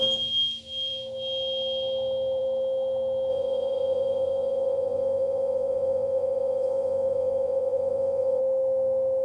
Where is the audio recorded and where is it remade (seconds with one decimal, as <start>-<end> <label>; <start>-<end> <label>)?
0.0-3.3 recorded; 3.3-8.4 remade; 8.4-9.2 recorded